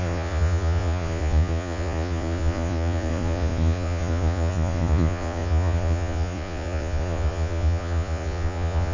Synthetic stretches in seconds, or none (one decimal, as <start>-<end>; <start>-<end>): 0.0-8.9